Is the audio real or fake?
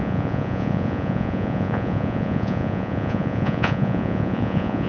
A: fake